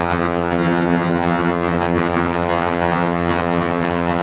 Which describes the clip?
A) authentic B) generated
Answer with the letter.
B